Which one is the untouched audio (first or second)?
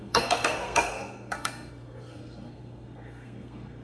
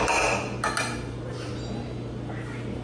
second